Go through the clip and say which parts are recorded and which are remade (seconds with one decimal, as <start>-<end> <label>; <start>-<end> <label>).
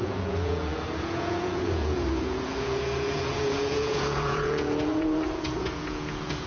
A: 0.0-6.5 remade